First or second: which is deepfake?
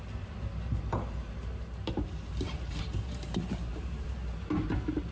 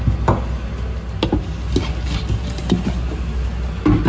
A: first